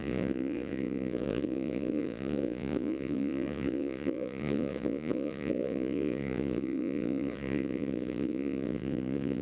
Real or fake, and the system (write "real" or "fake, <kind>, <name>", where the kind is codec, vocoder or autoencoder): fake, vocoder, Vocos